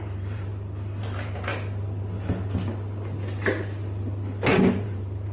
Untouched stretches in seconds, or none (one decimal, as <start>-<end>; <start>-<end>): 0.5-1.0; 1.5-4.7